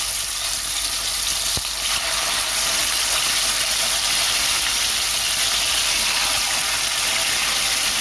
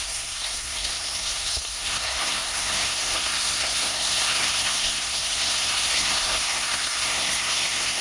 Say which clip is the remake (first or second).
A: second